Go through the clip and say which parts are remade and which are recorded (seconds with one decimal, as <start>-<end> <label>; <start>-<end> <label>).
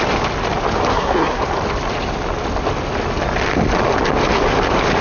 0.0-0.9 recorded; 0.9-1.4 remade; 1.4-5.0 recorded